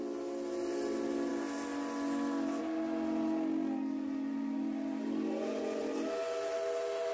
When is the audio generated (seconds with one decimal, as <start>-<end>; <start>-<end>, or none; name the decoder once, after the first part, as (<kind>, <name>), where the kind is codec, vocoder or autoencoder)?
none